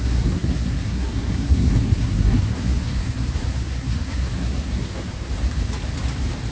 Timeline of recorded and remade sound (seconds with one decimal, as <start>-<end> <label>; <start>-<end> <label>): 0.0-5.3 remade; 5.3-6.5 recorded